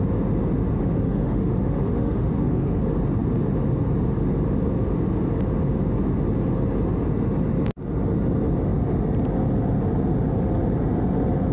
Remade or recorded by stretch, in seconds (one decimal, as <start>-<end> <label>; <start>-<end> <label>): 0.0-0.8 recorded; 0.8-2.8 remade; 2.8-11.5 recorded